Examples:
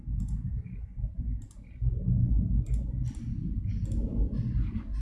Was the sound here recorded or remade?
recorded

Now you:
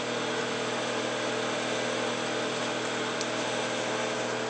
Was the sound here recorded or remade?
recorded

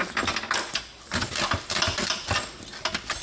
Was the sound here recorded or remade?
recorded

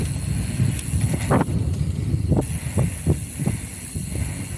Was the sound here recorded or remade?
recorded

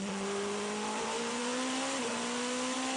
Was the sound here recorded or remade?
recorded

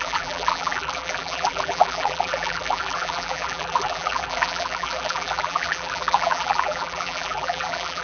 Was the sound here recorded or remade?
remade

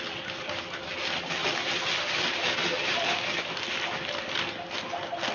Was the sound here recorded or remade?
recorded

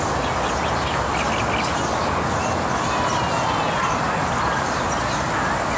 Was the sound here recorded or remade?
recorded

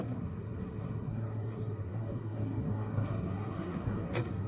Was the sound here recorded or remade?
remade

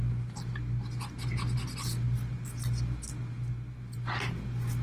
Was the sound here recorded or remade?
recorded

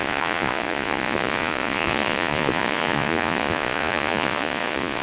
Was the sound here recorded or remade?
remade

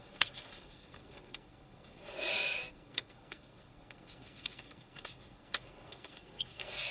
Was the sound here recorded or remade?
remade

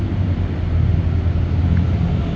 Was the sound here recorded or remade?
recorded